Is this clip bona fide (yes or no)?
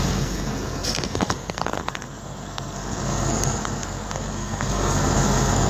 no